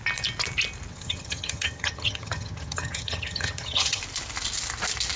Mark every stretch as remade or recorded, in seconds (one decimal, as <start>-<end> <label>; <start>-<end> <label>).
0.0-0.9 recorded; 0.9-4.0 remade; 4.0-5.2 recorded